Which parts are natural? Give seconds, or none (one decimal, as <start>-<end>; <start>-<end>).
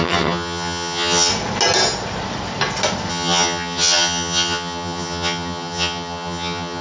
1.3-3.1